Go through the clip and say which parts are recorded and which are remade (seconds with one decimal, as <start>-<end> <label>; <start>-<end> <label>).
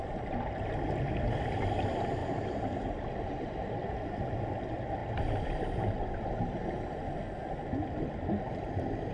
0.0-2.2 recorded; 2.2-3.2 remade; 3.2-9.1 recorded